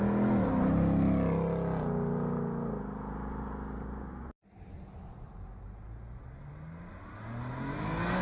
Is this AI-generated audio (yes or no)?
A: no